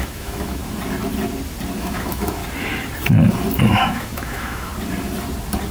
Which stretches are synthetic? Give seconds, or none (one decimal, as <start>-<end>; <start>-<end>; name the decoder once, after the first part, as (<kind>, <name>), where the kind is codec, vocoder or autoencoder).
0.0-0.6 (autoencoder, DAC-VAE); 1.8-2.4; 3.7-4.7